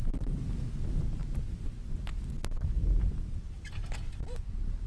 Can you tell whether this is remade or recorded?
recorded